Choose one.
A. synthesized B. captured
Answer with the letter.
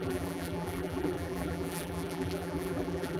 A